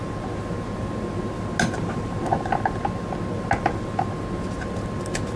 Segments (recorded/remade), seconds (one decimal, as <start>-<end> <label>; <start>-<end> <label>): 0.0-5.4 recorded